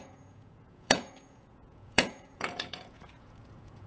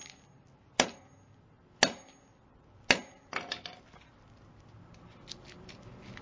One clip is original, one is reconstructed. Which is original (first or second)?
second